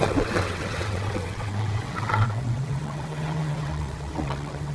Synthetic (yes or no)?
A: yes